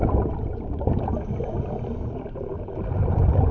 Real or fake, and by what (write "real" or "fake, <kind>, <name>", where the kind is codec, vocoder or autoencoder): real